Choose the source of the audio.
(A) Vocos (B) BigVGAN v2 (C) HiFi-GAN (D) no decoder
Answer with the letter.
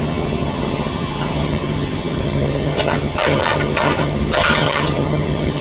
C